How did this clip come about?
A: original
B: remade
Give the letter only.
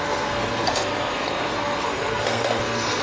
B